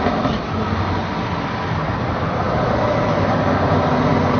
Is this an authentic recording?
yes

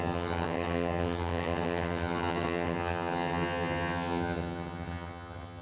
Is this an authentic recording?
no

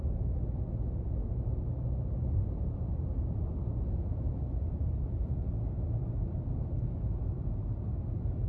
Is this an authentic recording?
yes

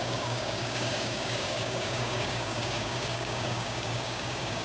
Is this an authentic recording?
no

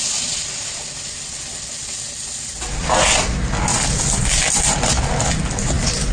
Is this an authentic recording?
yes